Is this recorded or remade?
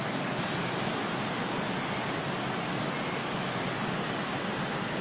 recorded